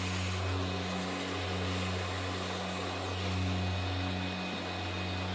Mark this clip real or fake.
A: real